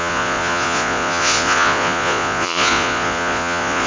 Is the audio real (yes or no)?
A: no